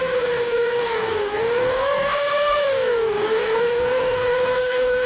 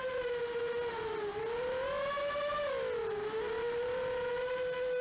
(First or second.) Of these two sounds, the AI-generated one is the first